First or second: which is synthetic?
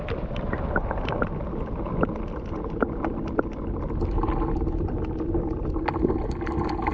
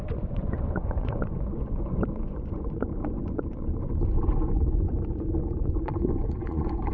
second